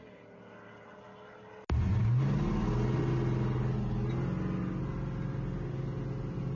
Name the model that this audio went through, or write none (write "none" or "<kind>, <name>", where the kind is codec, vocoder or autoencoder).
none